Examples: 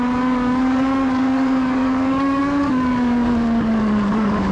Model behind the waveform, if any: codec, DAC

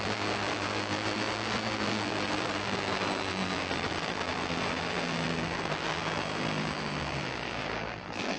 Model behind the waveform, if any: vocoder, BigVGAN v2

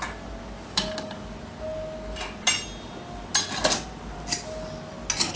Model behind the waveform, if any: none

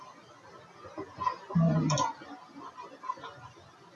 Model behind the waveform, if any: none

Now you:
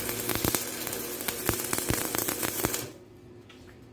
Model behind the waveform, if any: none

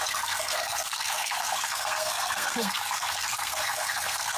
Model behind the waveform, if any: codec, SNAC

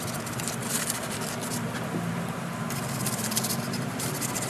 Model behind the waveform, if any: none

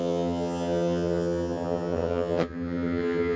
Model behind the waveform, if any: vocoder, HiFi-GAN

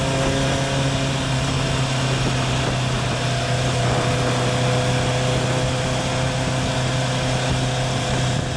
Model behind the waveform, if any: none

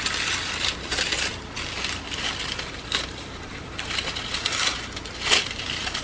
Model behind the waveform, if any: none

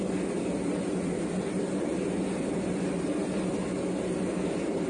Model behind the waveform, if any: vocoder, BigVGAN v2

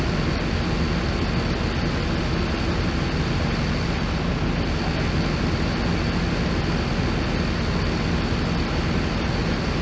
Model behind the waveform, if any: none